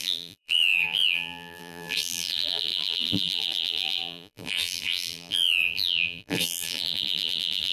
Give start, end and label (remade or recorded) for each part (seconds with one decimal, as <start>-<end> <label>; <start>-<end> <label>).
0.0-7.7 remade